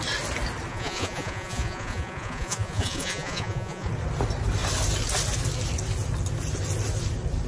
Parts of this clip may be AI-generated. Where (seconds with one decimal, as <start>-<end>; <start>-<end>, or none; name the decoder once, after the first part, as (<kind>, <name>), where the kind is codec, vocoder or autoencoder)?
0.7-3.9 (vocoder, Vocos)